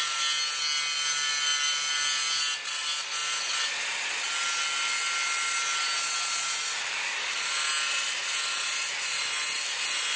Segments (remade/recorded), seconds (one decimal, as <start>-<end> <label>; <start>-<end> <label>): 0.0-10.2 recorded